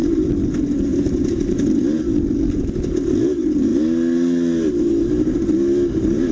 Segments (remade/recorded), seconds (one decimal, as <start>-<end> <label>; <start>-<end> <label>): 0.0-0.5 remade; 0.5-0.9 recorded; 0.9-2.6 remade; 2.6-6.3 recorded